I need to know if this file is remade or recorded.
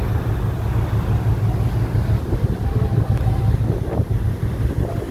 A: recorded